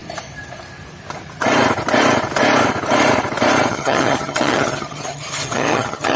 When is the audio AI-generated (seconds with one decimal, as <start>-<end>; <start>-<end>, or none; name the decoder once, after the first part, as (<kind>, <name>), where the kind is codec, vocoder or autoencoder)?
3.7-6.2 (vocoder, HiFi-GAN)